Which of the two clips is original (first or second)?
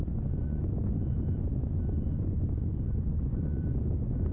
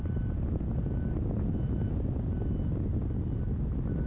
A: second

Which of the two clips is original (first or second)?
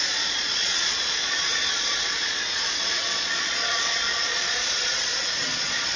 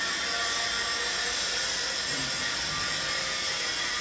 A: second